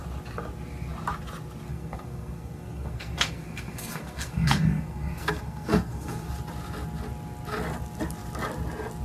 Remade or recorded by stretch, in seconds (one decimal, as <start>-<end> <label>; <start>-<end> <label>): 0.0-1.7 recorded; 1.7-6.3 remade; 6.3-9.0 recorded